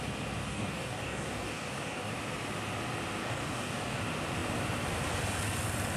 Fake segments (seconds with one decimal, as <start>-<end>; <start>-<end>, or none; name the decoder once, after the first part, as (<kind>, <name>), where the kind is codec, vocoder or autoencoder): 0.4-2.1 (codec, DAC); 3.2-4.0